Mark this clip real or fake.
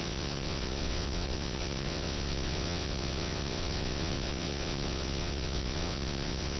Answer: fake